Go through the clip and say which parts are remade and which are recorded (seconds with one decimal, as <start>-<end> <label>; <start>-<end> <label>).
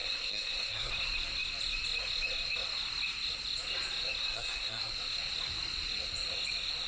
0.0-0.9 remade; 0.9-4.2 recorded; 4.2-4.9 remade; 4.9-6.9 recorded